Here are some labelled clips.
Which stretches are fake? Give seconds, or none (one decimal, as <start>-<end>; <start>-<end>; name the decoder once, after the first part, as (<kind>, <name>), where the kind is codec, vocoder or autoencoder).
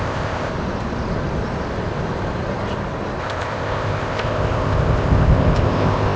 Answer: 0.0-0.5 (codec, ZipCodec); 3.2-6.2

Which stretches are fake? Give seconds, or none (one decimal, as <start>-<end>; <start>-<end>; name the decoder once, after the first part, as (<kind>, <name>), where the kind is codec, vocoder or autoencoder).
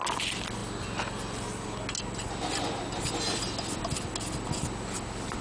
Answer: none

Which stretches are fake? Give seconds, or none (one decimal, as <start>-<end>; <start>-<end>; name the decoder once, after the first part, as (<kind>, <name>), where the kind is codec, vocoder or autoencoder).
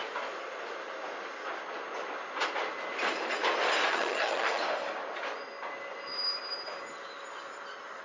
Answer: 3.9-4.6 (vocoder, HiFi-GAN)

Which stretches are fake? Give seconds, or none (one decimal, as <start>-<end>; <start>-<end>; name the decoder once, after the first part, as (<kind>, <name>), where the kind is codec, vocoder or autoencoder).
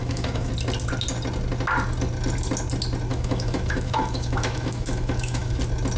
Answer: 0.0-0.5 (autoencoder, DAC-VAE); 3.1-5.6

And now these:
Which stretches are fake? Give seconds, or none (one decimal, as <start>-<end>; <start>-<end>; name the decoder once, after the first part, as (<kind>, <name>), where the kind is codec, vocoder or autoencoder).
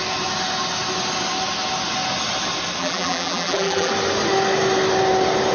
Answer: 2.8-3.9 (vocoder, BigVGAN v2)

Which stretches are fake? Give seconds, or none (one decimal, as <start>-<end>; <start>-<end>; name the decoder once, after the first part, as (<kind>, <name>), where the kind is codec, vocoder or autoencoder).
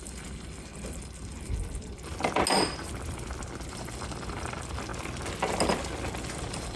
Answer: 0.0-2.1 (vocoder, BigVGAN v2); 3.7-4.9; 6.3-6.8